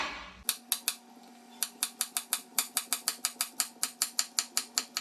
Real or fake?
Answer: real